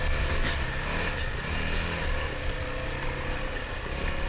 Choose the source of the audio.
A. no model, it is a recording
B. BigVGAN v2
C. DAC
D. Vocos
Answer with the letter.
A